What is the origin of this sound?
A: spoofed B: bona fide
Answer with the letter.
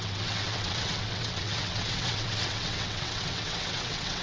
A